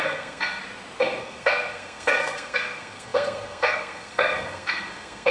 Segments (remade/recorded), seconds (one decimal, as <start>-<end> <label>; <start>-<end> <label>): 0.0-0.6 remade; 0.6-1.2 recorded; 1.2-5.3 remade